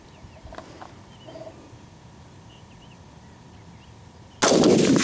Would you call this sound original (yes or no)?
yes